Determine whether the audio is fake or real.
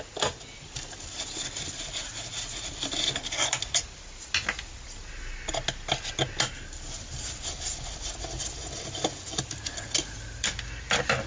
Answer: real